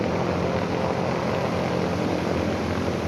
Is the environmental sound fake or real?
real